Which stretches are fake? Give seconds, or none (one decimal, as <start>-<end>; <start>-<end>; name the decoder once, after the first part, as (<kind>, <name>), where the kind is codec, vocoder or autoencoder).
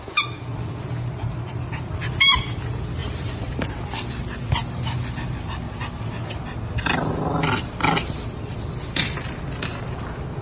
3.0-3.6 (vocoder, BigVGAN v2)